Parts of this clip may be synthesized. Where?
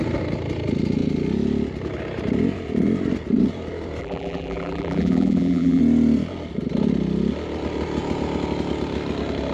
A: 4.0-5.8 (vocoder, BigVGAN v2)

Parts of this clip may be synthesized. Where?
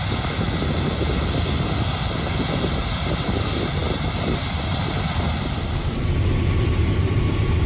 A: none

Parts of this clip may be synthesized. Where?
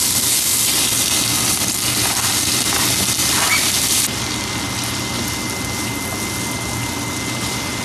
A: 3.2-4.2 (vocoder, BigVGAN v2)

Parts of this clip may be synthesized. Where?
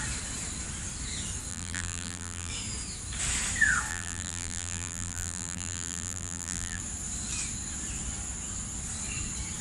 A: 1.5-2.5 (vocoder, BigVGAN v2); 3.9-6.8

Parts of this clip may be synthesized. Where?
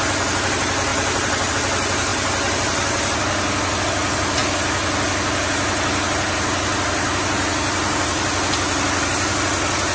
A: 0.9-1.5 (vocoder, BigVGAN v2)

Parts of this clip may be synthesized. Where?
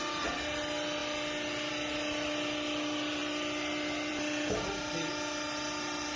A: none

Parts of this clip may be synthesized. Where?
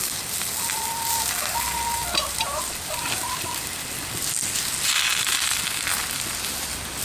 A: 2.0-2.7 (vocoder, BigVGAN v2); 5.1-5.6